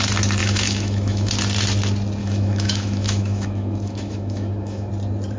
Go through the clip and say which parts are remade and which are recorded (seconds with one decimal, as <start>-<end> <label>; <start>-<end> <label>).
0.0-0.4 recorded; 0.4-1.3 remade; 1.3-2.2 recorded; 2.2-4.9 remade; 4.9-5.4 recorded